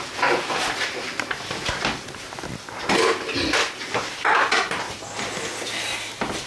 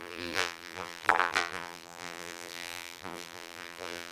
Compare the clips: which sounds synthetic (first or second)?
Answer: second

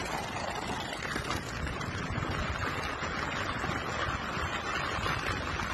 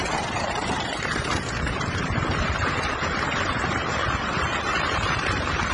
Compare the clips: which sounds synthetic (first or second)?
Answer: second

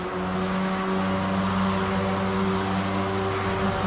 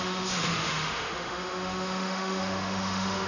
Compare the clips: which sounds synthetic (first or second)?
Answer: second